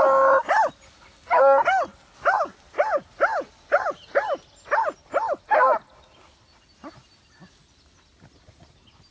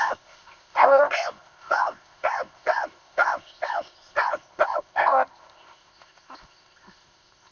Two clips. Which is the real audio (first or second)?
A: first